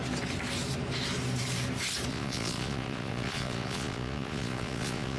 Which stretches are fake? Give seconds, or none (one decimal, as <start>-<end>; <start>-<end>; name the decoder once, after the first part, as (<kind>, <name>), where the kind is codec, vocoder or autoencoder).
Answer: 2.1-5.2 (vocoder, Vocos)